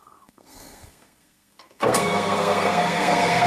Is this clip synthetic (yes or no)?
yes